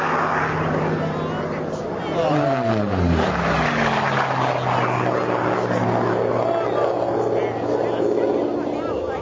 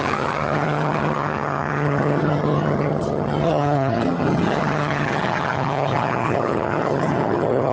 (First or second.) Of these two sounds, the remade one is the second